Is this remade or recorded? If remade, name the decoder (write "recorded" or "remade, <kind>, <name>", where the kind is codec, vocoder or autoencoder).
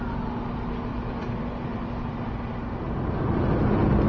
recorded